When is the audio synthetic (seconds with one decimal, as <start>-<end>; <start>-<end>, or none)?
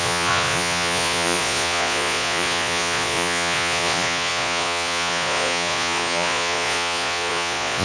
0.0-7.8